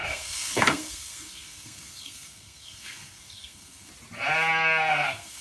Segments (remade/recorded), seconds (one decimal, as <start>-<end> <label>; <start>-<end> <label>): 0.0-3.9 remade; 3.9-4.9 recorded; 4.9-5.4 remade